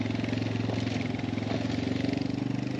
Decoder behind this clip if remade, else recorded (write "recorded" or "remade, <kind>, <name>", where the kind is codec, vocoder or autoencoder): recorded